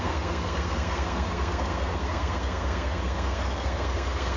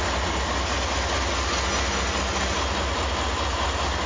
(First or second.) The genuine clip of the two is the second